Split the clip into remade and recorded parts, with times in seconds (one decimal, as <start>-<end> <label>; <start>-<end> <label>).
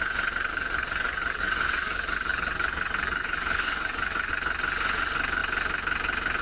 0.0-0.5 recorded; 0.5-4.3 remade; 4.3-6.4 recorded